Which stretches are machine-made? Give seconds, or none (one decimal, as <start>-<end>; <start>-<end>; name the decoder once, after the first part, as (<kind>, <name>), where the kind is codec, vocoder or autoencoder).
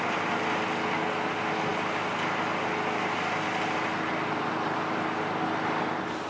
none